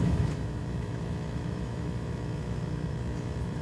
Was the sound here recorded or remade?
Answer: remade